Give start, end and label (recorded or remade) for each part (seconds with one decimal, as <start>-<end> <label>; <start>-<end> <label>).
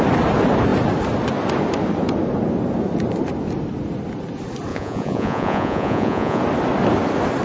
0.0-4.7 recorded; 4.7-6.4 remade; 6.4-7.4 recorded